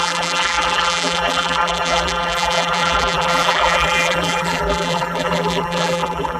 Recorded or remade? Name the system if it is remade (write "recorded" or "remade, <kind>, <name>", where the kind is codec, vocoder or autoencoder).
remade, vocoder, BigVGAN v2